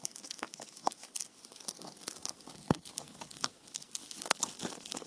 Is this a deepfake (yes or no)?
yes